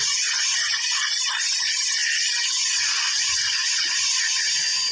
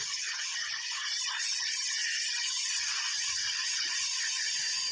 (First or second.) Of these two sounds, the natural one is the first